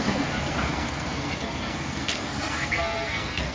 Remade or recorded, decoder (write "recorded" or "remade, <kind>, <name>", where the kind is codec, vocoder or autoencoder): remade, codec, SNAC